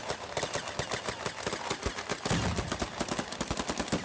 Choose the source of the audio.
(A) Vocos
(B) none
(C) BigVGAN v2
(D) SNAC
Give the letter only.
B